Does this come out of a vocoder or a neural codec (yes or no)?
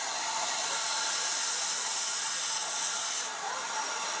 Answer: no